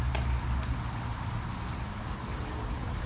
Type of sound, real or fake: real